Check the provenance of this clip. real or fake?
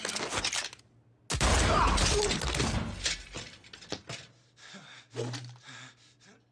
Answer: real